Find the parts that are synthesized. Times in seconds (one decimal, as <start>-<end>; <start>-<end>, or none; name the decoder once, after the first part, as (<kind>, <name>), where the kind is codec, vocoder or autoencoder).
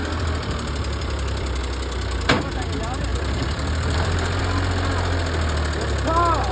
0.0-1.6 (vocoder, BigVGAN v2); 3.1-4.4